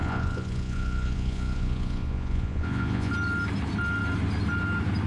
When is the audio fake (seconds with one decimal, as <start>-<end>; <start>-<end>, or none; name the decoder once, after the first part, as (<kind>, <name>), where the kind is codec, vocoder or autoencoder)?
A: 0.0-3.1 (vocoder, Vocos)